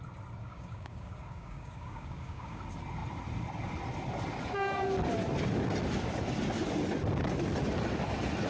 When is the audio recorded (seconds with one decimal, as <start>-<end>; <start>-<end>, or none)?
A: 0.0-0.4; 2.6-8.5